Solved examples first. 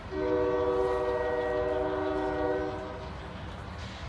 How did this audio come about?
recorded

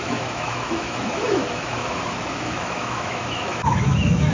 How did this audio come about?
remade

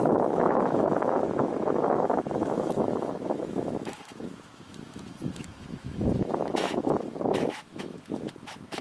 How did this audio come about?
remade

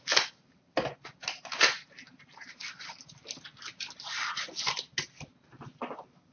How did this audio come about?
recorded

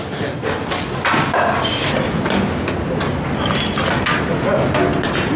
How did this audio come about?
recorded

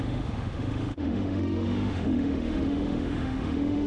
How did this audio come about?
remade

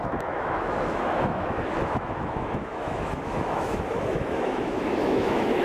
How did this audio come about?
remade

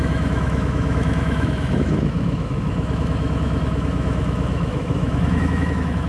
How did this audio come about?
remade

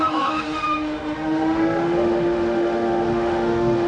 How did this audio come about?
remade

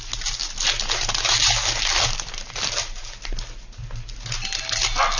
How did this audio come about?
recorded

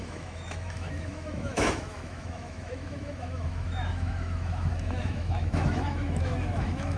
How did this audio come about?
remade